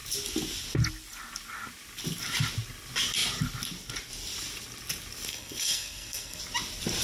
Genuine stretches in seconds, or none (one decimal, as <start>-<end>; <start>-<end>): 0.0-5.3; 6.4-7.0